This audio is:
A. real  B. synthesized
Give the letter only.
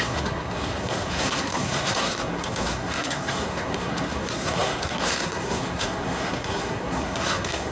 B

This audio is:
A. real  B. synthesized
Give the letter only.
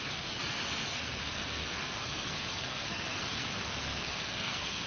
B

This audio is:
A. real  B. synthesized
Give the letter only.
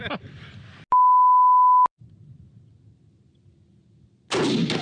A